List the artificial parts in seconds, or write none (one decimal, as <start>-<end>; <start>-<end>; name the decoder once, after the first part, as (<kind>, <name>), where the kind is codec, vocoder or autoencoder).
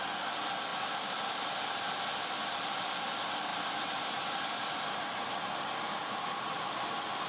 none